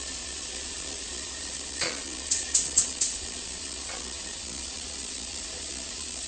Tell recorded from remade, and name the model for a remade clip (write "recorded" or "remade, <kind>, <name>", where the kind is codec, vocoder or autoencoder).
remade, vocoder, Vocos